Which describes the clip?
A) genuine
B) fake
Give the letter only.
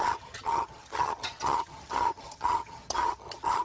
B